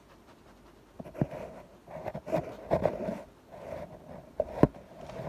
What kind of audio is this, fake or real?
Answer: real